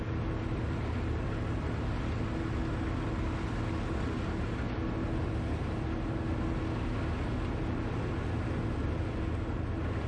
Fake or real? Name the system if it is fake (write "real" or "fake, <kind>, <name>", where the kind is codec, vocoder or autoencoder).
real